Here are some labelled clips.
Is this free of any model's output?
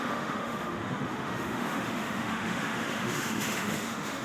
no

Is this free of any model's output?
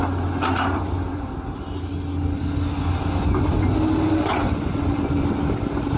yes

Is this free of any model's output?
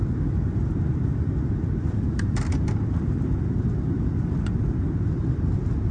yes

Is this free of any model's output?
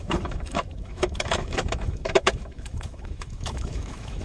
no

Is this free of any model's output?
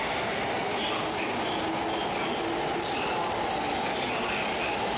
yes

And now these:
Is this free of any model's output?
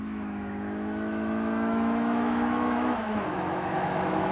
no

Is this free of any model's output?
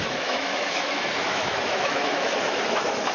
no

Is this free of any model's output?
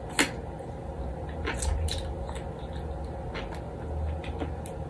yes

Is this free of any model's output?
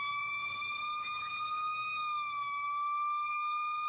yes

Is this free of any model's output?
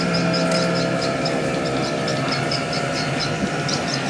yes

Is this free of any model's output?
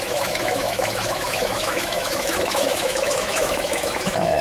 no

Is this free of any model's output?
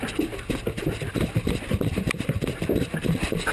yes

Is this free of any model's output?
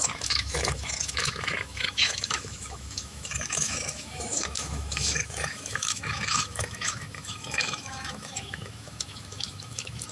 no